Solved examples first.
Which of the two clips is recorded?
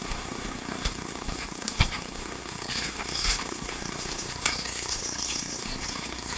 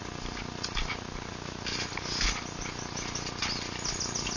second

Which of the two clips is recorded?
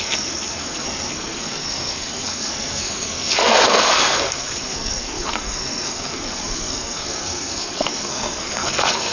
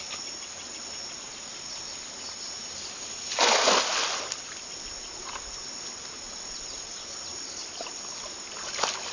second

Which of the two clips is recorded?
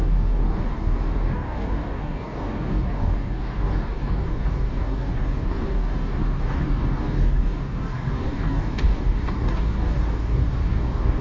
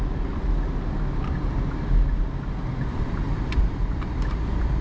second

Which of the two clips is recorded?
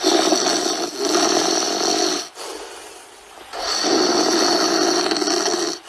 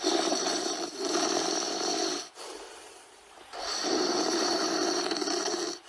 first